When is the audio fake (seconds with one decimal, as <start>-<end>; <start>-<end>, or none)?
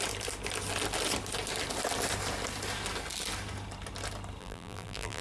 4.4-5.2